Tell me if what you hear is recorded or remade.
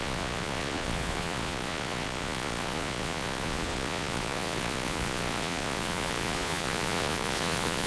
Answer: remade